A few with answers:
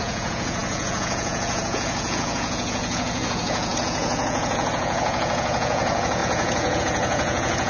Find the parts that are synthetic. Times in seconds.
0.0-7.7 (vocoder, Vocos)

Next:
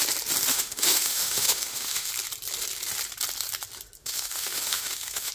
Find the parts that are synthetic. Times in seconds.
0.5-2.1 (autoencoder, DAC-VAE); 4.0-5.3

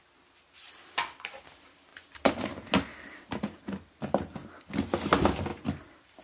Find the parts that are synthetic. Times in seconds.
1.9-2.5 (vocoder, BigVGAN v2); 2.9-4.4; 5.5-6.2

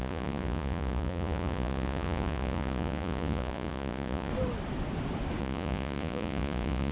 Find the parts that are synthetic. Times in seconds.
0.0-4.3 (vocoder, Vocos); 5.4-6.9

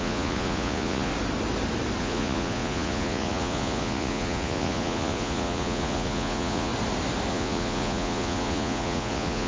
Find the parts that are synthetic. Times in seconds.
0.0-1.1 (vocoder, Vocos); 2.0-6.7; 7.3-9.5